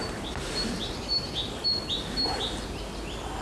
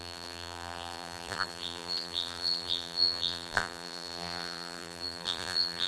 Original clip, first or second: first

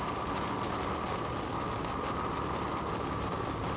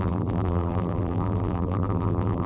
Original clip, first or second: first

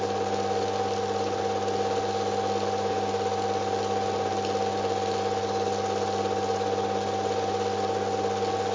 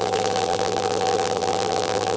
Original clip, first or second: first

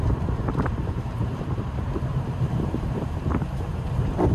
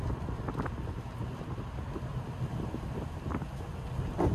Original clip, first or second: second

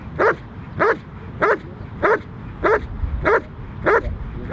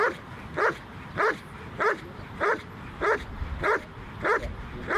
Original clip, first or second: first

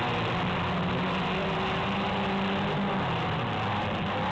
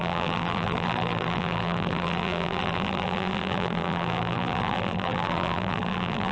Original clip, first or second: first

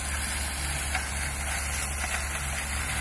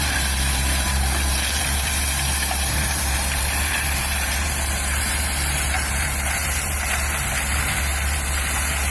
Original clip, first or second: first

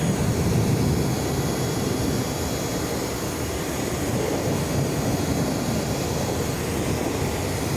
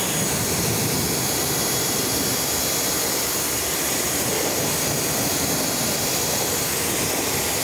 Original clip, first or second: first